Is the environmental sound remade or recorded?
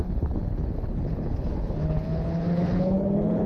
remade